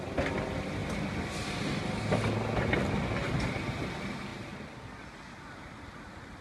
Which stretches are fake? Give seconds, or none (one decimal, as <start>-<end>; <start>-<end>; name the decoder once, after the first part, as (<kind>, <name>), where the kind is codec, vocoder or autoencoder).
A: none